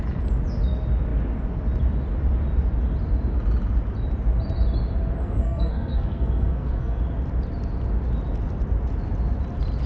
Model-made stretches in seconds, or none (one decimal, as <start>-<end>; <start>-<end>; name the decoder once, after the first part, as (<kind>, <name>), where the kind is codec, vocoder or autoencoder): 5.2-7.0 (codec, SNAC)